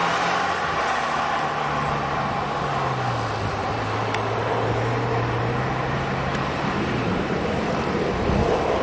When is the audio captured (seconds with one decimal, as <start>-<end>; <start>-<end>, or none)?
0.0-3.5